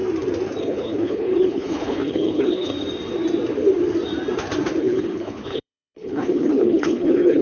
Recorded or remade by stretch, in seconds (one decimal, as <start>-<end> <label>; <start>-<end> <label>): 0.0-0.6 recorded; 0.6-2.7 remade; 2.7-4.8 recorded; 4.8-7.4 remade